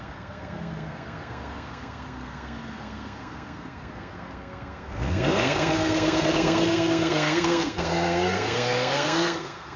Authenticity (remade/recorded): remade